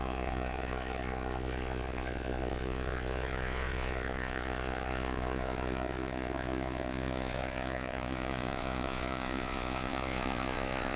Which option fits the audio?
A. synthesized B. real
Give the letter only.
A